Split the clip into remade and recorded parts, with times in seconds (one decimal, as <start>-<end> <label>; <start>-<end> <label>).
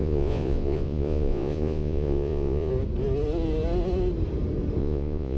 0.0-2.7 remade; 2.7-4.8 recorded; 4.8-5.4 remade